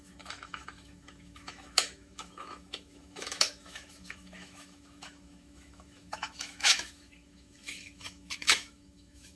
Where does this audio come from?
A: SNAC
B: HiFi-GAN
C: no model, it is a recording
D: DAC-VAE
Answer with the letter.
D